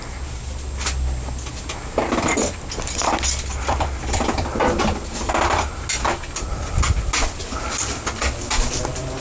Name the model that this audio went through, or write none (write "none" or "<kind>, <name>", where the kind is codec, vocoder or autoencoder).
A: none